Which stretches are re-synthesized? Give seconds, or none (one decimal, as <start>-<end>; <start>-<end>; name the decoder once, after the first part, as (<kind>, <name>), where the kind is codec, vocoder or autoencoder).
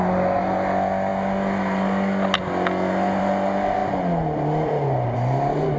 none